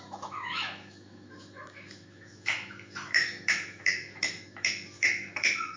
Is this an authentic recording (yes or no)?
no